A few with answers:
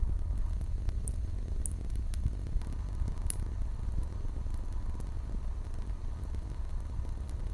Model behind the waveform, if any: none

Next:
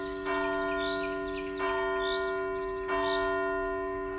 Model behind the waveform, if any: none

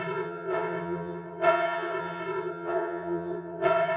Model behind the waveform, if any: vocoder, WaveNeXt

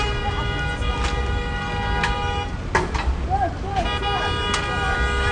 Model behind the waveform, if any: none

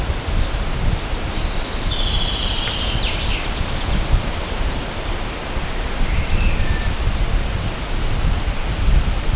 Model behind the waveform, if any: none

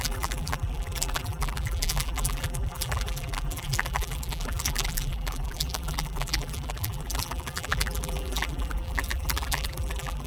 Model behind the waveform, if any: vocoder, BigVGAN v2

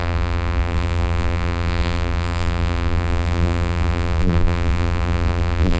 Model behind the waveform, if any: vocoder, BigVGAN v2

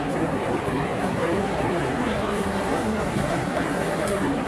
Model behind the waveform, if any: codec, SNAC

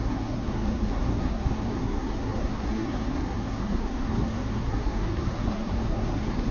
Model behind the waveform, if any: codec, SNAC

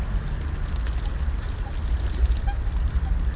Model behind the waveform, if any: none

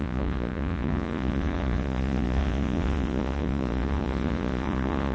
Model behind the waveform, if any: vocoder, Vocos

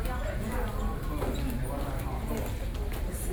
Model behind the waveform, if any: none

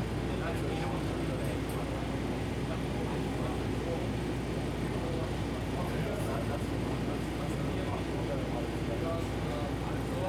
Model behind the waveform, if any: none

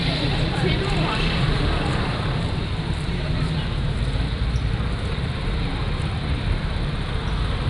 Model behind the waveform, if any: vocoder, BigVGAN v2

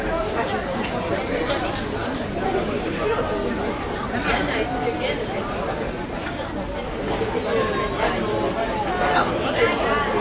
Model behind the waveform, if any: none